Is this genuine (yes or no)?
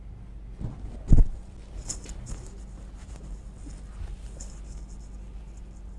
yes